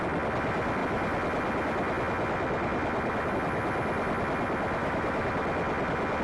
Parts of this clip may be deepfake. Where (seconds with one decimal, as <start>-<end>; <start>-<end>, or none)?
4.8-5.3